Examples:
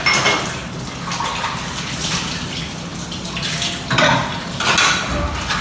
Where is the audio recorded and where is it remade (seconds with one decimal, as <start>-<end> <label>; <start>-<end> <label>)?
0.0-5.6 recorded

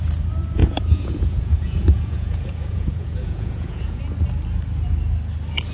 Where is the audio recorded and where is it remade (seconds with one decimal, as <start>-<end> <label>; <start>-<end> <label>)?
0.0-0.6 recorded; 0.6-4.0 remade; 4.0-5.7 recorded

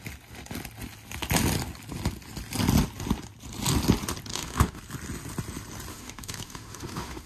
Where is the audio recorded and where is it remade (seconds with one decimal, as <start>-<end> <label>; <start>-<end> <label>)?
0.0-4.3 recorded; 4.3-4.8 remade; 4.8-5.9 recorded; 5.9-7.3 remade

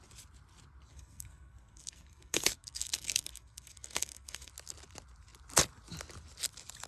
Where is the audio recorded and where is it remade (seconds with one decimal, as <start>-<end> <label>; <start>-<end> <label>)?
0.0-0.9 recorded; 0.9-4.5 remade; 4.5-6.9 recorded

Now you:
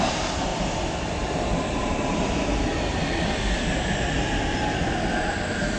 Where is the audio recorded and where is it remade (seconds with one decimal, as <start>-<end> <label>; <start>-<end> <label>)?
0.0-5.8 recorded